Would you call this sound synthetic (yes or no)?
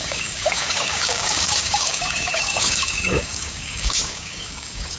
yes